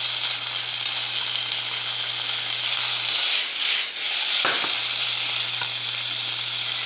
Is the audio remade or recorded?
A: recorded